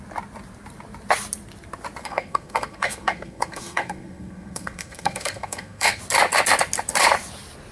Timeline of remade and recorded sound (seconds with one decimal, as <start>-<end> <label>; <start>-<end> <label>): 0.0-2.0 recorded; 2.0-6.0 remade; 6.0-7.7 recorded